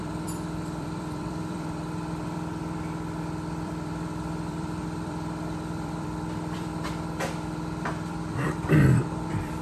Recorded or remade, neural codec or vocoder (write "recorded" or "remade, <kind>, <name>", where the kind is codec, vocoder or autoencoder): remade, vocoder, BigVGAN v2